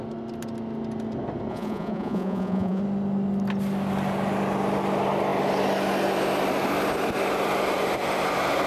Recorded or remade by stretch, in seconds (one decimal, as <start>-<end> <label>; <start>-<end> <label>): 0.0-1.5 recorded; 1.5-2.8 remade; 2.8-8.7 recorded